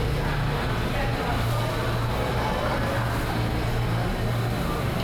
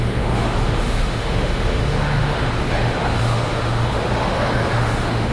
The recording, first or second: first